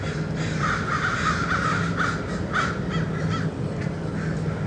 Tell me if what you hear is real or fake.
real